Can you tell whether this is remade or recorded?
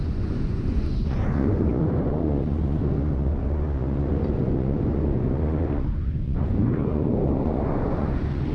remade